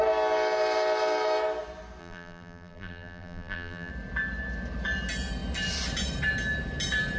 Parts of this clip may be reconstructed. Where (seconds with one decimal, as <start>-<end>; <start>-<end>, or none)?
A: 2.0-3.9